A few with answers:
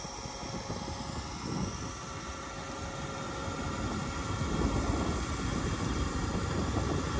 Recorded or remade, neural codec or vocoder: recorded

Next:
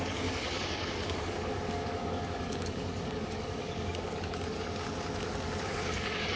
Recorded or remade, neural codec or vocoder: remade, codec, DAC